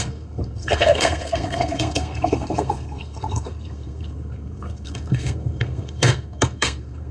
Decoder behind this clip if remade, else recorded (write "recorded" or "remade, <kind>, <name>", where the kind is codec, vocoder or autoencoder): remade, codec, SNAC